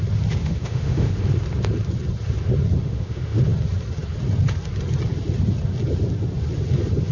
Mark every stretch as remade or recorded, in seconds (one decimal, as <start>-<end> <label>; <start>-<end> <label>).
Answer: 0.0-0.4 recorded; 0.4-1.1 remade; 1.1-2.8 recorded; 2.8-3.4 remade; 3.4-7.1 recorded